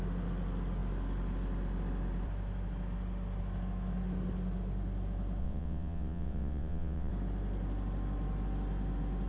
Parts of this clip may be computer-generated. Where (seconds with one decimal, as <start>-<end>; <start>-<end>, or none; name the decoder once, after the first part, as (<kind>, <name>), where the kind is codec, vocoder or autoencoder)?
5.4-7.1 (vocoder, WaveNeXt)

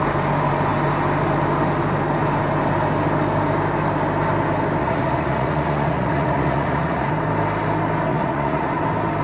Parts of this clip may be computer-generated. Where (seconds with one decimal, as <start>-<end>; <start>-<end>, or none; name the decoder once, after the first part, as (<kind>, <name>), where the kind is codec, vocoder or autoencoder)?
4.8-7.1 (vocoder, Vocos); 8.1-8.7

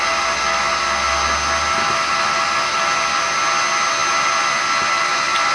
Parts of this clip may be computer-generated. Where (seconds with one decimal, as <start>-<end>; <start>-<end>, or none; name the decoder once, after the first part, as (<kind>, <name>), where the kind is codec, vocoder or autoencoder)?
none

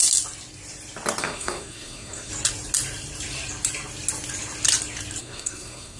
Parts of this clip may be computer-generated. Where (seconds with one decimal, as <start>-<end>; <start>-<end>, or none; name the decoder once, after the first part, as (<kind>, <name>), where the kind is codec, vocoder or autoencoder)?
1.2-2.3 (codec, SNAC); 5.2-6.0

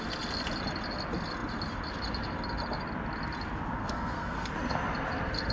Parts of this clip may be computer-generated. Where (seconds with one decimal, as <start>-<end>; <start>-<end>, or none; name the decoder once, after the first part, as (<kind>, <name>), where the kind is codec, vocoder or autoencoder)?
3.8-4.5 (codec, SNAC)